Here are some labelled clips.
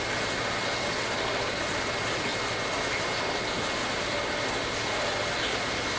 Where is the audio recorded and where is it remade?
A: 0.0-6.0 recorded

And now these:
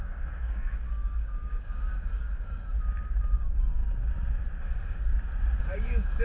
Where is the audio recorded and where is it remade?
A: 0.0-2.7 remade; 2.7-3.2 recorded; 3.2-3.8 remade; 3.8-4.6 recorded; 4.6-5.1 remade; 5.1-5.6 recorded; 5.6-6.2 remade

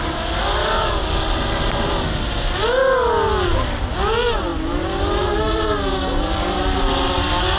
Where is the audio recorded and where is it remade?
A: 0.0-0.6 recorded; 0.6-1.1 remade; 1.1-7.6 recorded

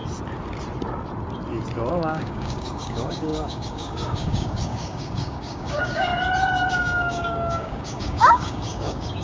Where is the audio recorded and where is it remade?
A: 0.0-1.9 recorded; 1.9-6.1 remade; 6.1-6.7 recorded; 6.7-9.2 remade

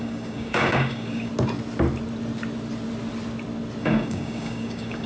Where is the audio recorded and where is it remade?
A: 0.0-1.3 remade; 1.3-3.8 recorded; 3.8-5.1 remade